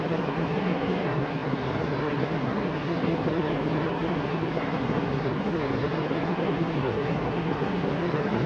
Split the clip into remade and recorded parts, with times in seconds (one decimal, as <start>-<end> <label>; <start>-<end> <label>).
0.0-8.5 remade